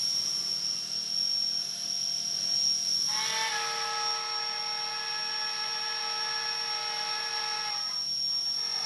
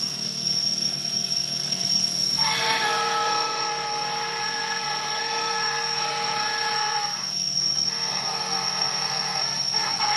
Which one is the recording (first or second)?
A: first